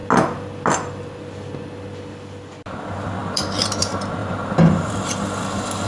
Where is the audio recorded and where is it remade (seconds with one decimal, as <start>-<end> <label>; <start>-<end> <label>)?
0.0-3.2 recorded; 3.2-3.8 remade; 3.8-4.2 recorded; 4.2-4.9 remade; 4.9-5.9 recorded